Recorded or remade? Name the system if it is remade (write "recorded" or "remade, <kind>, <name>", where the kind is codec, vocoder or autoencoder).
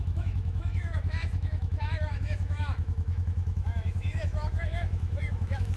remade, autoencoder, DAC-VAE